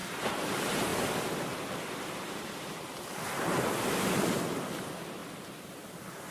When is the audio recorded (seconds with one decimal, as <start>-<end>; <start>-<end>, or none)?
0.9-2.1; 5.2-6.3